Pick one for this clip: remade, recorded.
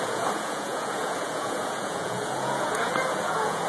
remade